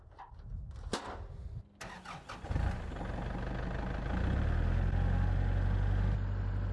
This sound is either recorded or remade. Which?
recorded